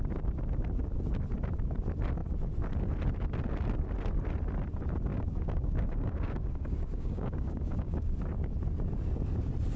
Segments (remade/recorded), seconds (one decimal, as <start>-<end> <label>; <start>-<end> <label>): 0.0-5.1 recorded; 5.1-8.1 remade; 8.1-9.8 recorded